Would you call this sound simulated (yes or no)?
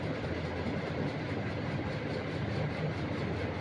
no